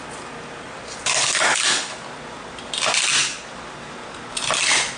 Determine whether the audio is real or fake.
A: real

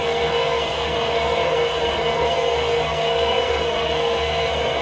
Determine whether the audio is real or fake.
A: fake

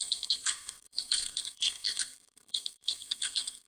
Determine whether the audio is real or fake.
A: fake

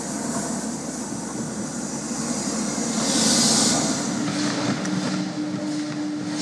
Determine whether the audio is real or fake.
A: real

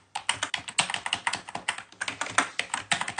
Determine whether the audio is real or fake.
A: real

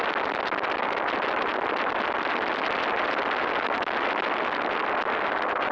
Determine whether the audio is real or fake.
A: real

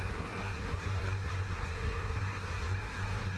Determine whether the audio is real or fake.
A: fake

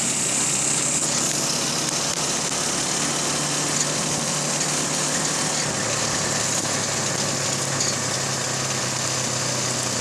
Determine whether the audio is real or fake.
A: real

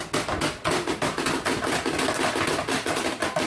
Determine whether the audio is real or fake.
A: real